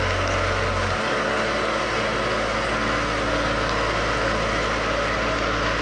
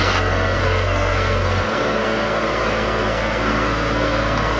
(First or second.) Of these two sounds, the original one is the first